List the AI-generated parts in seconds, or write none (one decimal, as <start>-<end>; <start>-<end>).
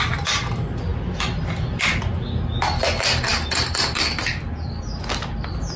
none